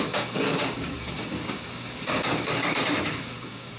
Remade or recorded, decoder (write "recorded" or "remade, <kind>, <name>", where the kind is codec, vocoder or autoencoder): remade, codec, DAC